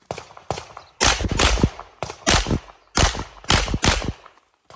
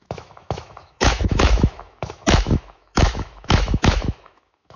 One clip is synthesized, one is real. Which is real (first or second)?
first